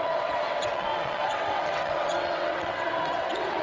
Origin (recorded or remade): remade